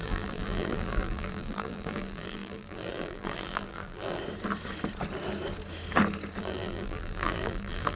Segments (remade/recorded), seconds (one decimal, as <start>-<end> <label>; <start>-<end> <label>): 0.0-4.2 remade; 4.2-6.4 recorded; 6.4-8.0 remade